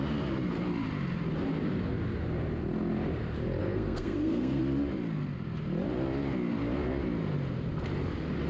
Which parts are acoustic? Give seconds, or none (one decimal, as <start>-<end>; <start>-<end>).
0.0-3.6; 4.6-8.5